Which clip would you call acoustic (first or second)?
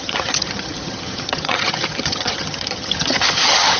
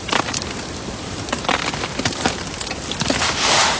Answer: second